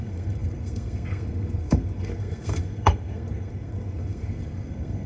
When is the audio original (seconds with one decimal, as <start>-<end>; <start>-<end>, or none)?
none